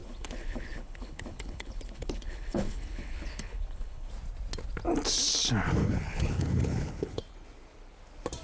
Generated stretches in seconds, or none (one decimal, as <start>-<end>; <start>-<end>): 0.0-4.1; 5.8-7.2